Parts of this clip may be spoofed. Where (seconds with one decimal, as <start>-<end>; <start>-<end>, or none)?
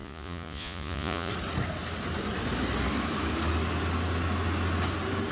0.0-1.3